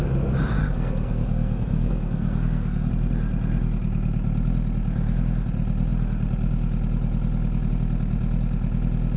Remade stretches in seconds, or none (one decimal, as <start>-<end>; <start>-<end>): 0.6-2.9